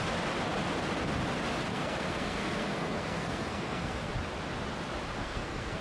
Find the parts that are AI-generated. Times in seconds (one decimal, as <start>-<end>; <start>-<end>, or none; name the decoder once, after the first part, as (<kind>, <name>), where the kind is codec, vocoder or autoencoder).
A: 1.7-4.1 (codec, SNAC); 5.2-5.8